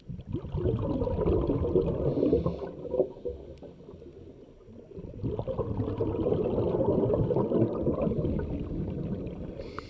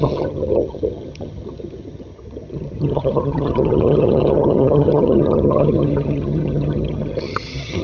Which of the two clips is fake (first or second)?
second